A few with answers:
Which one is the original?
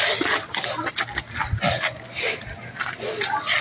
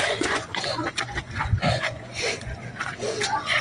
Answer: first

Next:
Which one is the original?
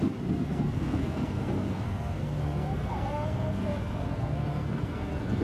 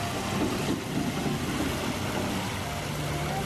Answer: second